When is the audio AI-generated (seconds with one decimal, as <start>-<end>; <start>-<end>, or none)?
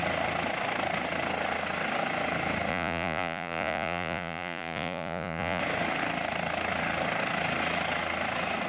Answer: 2.7-5.6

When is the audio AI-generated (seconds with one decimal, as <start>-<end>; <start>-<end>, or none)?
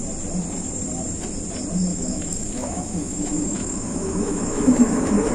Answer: 1.9-5.3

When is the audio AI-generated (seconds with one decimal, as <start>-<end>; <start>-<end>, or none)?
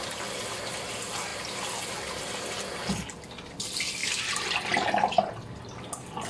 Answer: none